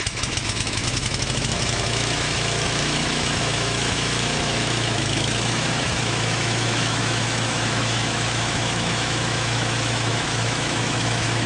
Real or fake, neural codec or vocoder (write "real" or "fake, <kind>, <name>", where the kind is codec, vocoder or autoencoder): fake, autoencoder, DAC-VAE